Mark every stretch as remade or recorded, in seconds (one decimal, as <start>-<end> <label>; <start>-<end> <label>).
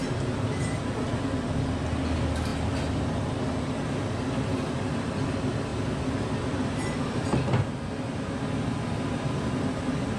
0.0-10.2 recorded